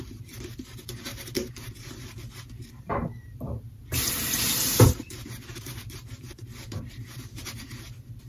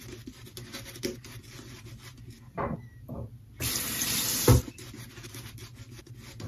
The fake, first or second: first